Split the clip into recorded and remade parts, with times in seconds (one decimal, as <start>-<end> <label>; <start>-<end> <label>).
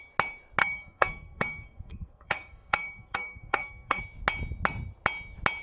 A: 0.0-0.6 recorded; 0.6-4.0 remade; 4.0-5.6 recorded